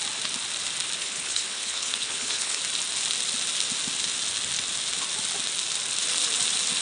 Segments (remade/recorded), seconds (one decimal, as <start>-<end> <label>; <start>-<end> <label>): 0.0-1.0 recorded; 1.0-2.6 remade; 2.6-6.8 recorded